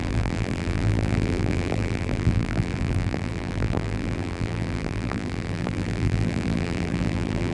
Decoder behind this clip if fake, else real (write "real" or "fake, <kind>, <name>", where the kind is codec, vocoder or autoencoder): fake, vocoder, BigVGAN v2